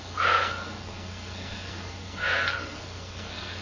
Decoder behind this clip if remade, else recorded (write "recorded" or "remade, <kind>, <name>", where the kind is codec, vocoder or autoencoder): remade, codec, SNAC